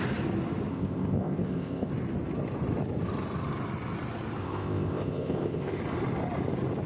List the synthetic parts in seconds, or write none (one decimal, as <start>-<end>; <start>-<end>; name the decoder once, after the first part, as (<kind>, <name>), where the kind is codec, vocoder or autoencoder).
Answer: 0.7-1.9 (codec, ZipCodec); 4.4-5.8